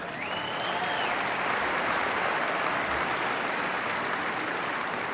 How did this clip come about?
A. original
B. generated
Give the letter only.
A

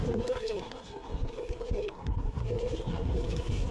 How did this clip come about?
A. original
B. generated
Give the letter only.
B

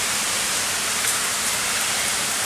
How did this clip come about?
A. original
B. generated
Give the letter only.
B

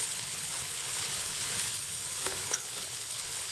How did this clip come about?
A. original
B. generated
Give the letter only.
B